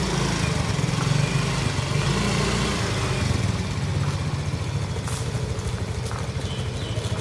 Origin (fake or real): real